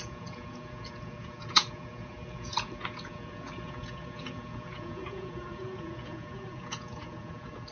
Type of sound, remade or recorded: remade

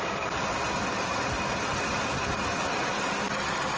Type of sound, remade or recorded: recorded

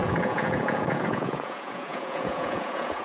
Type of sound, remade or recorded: remade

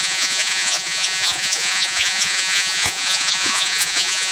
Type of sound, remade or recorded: remade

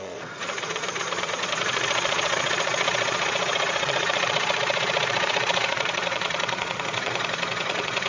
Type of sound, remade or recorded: remade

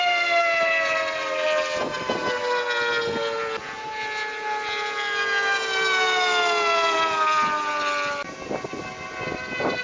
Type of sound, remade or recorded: recorded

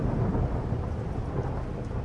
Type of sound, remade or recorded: recorded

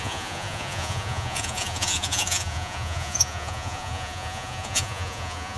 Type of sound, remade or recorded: remade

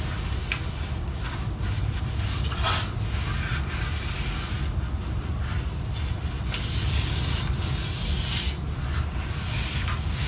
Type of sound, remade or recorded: recorded